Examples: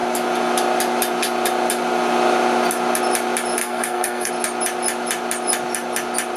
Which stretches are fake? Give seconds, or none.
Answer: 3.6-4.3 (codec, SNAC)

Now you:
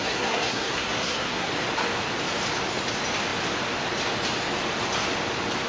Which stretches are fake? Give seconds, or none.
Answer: 0.0-1.5 (codec, SNAC)

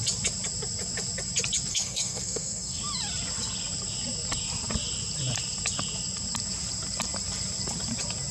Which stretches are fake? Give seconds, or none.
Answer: 1.7-2.8 (codec, SNAC)

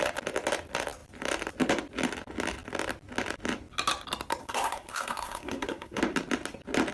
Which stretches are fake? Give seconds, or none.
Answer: 4.4-6.0 (codec, SNAC)

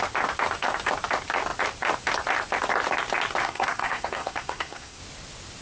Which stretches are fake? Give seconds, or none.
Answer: 3.4-5.0 (codec, SNAC)

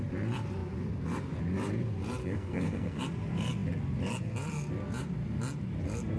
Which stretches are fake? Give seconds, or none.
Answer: 2.2-3.0 (codec, SNAC)

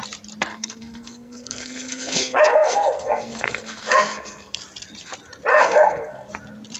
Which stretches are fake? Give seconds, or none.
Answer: 0.5-4.6 (codec, SNAC); 5.5-6.3